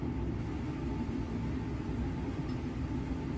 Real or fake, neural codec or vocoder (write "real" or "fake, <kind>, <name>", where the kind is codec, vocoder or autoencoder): real